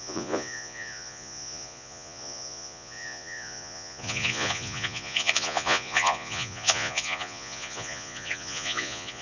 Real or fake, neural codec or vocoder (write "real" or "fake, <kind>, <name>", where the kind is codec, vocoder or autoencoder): fake, vocoder, Vocos